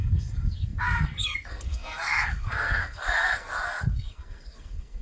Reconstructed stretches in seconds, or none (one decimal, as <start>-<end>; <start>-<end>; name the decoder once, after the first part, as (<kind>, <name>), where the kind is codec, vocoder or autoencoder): 0.0-5.0 (codec, SNAC)